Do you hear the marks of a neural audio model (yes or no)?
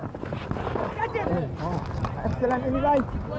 no